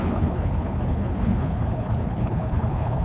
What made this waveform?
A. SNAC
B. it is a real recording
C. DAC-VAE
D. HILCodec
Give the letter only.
D